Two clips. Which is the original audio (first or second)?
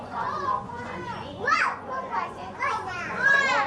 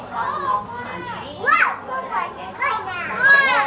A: second